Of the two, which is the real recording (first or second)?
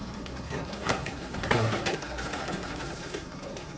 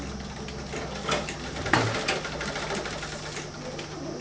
second